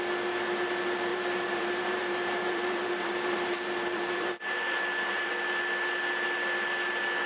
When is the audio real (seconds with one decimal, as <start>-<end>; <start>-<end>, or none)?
0.0-1.1; 5.3-7.3